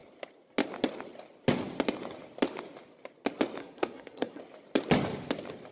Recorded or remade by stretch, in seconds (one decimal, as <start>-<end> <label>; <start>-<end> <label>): 0.0-3.6 recorded; 3.6-4.4 remade; 4.4-5.7 recorded